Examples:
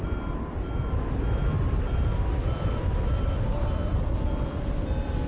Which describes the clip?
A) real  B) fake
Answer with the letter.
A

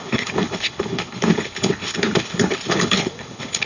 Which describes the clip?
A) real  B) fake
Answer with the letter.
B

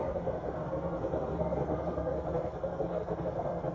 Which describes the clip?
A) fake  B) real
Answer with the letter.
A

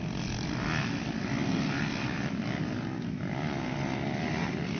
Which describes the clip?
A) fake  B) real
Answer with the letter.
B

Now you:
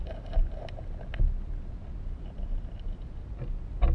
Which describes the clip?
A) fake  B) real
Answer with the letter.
B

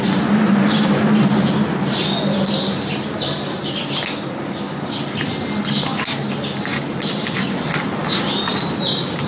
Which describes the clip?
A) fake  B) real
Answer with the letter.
B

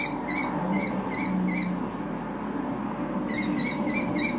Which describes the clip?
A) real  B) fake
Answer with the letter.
A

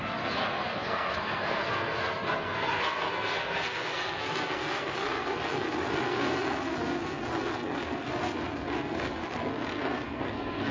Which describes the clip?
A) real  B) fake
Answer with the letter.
B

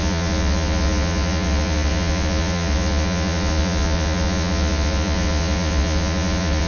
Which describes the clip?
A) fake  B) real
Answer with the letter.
A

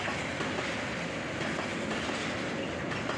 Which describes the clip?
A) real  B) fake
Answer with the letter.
A